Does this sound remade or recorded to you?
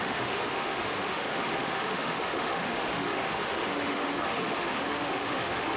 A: remade